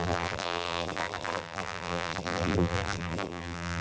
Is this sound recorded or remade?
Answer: remade